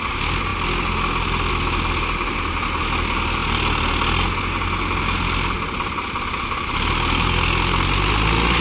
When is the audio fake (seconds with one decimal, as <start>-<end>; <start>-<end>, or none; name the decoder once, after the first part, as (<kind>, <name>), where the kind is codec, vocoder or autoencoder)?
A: none